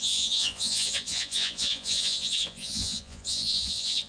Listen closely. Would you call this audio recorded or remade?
remade